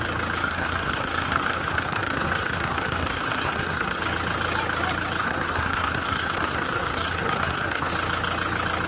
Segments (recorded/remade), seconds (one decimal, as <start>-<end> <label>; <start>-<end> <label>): 0.0-0.4 recorded; 0.4-4.0 remade; 4.0-5.2 recorded; 5.2-7.9 remade; 7.9-8.9 recorded